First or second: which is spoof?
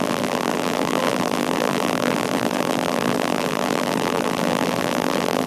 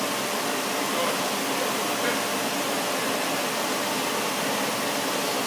first